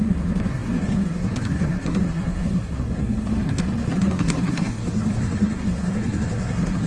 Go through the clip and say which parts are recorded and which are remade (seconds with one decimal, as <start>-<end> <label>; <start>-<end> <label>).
0.0-6.9 remade